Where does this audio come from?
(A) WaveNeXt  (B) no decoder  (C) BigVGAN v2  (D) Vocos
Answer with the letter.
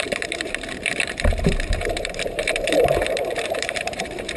C